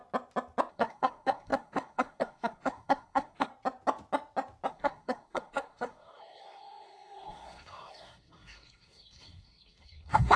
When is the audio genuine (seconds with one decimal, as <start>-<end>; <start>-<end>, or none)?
0.0-0.7; 3.5-4.7